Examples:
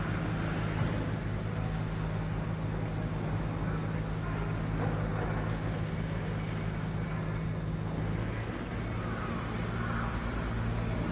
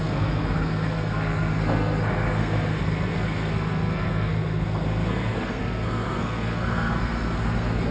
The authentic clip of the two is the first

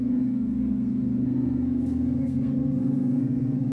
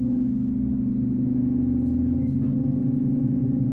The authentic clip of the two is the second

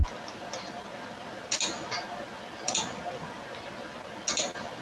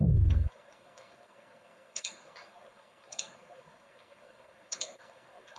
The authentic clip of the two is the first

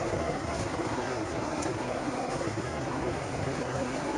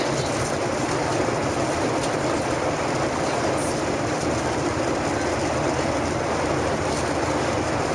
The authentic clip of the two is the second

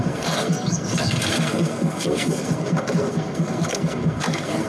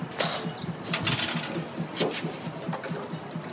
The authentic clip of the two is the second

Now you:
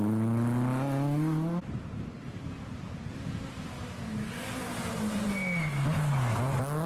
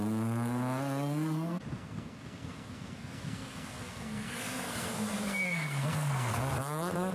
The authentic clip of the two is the first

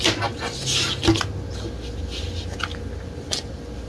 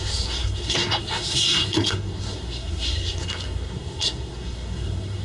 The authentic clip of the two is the first